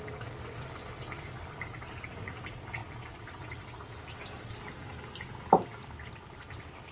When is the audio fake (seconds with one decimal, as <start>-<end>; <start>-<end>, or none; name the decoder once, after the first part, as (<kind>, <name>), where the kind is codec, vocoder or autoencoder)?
none